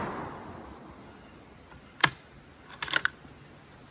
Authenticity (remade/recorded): recorded